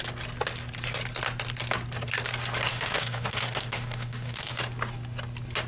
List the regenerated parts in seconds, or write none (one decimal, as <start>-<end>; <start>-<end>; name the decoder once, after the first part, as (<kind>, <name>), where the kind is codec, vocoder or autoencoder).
2.7-4.5 (autoencoder, DAC-VAE)

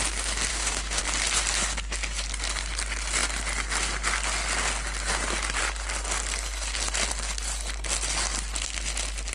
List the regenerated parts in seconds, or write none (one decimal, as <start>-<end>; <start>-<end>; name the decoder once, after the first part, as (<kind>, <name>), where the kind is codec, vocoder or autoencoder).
0.5-1.0 (autoencoder, DAC-VAE)

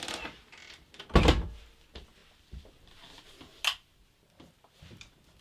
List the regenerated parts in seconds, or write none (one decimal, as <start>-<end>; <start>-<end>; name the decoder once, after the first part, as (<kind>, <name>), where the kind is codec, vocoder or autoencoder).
none

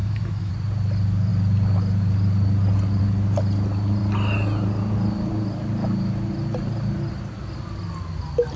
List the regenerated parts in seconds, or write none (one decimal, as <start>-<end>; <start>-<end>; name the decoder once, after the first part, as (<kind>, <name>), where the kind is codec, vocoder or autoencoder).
0.0-0.5 (autoencoder, DAC-VAE)

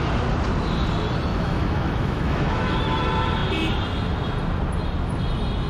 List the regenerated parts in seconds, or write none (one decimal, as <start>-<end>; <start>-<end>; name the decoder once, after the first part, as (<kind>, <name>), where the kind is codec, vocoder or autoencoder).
1.3-3.0 (autoencoder, DAC-VAE)